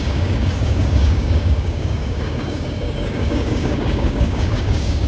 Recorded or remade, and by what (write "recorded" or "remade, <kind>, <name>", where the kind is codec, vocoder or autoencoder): remade, codec, DAC